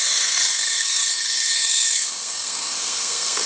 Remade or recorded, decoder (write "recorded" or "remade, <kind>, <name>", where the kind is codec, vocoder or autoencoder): remade, codec, SNAC